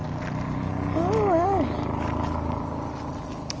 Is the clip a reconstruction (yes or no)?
no